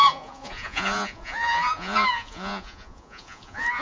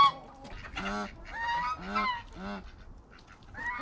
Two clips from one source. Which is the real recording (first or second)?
second